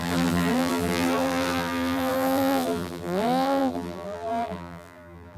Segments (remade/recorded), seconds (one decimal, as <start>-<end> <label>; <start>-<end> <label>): 0.0-5.4 remade